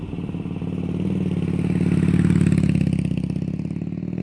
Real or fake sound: real